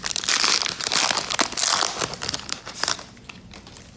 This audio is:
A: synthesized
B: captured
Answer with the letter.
B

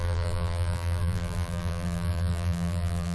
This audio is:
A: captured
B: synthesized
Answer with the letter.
B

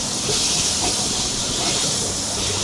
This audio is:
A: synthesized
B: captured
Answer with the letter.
A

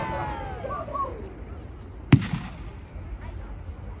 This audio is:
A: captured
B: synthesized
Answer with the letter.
A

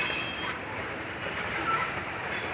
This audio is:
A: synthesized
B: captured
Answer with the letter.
A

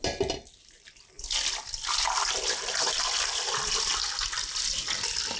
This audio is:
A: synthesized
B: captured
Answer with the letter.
B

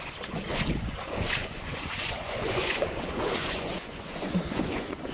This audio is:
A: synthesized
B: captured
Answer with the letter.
A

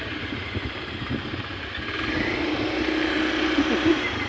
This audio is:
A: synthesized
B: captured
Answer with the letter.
B